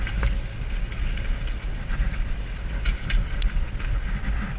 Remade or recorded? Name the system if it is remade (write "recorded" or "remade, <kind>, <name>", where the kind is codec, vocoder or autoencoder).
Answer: recorded